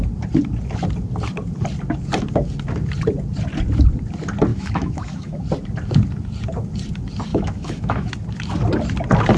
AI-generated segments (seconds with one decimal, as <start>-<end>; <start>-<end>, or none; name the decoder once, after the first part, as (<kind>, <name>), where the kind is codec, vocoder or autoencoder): 4.5-5.4 (autoencoder, DAC-VAE); 7.3-8.1